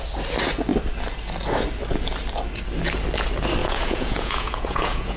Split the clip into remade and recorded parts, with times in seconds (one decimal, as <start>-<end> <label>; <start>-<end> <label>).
0.0-3.6 recorded; 3.6-5.2 remade